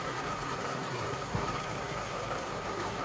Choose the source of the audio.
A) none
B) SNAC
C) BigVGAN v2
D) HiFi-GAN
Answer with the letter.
B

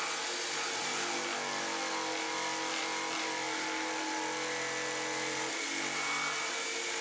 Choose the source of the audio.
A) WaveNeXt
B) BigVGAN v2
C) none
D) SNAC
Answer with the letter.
C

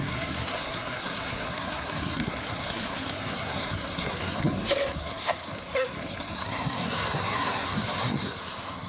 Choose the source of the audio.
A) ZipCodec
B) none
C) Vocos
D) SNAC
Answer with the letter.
D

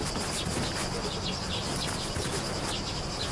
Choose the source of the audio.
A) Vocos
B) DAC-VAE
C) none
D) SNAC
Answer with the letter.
C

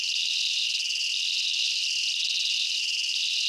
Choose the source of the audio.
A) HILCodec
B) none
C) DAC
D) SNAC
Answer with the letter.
B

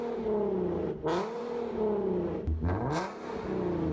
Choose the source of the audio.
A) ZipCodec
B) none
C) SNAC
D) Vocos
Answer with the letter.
B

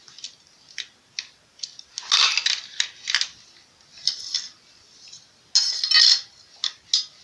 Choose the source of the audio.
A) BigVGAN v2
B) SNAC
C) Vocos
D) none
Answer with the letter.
D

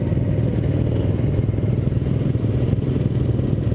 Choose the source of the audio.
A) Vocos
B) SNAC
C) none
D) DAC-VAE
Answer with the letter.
C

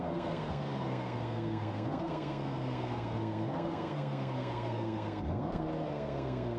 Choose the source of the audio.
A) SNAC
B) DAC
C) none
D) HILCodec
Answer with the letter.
A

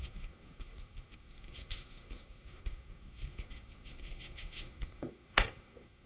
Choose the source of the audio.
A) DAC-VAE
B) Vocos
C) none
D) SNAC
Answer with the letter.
D